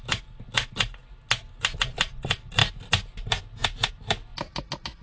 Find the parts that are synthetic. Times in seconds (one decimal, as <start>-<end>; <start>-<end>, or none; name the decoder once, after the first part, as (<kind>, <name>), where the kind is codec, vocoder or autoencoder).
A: none